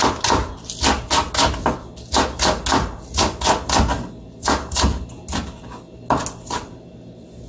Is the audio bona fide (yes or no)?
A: yes